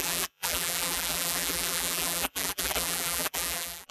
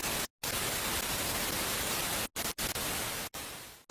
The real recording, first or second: second